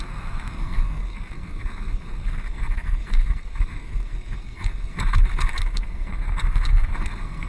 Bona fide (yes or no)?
no